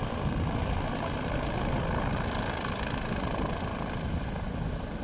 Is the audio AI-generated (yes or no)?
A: no